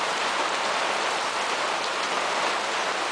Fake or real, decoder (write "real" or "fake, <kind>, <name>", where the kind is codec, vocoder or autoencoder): real